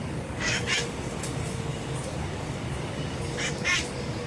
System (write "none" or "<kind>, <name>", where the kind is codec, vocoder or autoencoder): codec, DAC